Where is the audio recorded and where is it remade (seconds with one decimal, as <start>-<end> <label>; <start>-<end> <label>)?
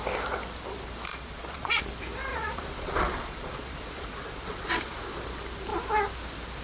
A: 0.0-1.1 recorded; 1.1-1.8 remade; 1.8-2.3 recorded; 2.3-5.0 remade; 5.0-6.6 recorded